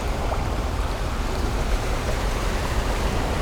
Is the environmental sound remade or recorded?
remade